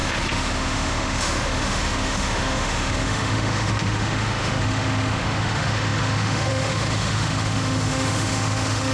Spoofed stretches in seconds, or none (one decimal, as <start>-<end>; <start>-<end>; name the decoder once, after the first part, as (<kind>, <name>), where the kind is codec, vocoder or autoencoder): 0.0-8.9 (autoencoder, DAC-VAE)